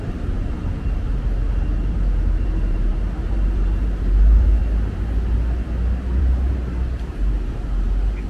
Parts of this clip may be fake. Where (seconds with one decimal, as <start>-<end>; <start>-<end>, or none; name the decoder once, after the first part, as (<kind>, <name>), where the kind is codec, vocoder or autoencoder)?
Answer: 0.0-1.0 (vocoder, BigVGAN v2); 1.9-4.6; 6.2-8.3